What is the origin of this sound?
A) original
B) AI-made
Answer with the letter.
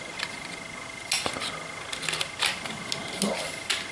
A